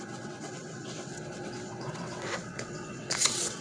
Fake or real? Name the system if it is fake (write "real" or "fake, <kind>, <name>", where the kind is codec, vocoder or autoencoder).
fake, vocoder, WaveNeXt